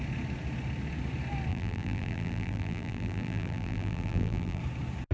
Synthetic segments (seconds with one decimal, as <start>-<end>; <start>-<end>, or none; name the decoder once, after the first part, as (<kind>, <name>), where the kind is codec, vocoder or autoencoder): 1.5-4.6 (vocoder, BigVGAN v2)